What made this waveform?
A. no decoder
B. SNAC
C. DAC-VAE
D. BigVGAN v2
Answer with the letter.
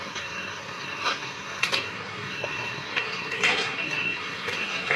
B